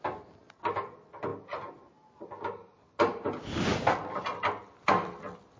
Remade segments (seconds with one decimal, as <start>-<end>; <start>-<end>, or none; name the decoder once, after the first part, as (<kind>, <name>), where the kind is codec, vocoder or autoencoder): none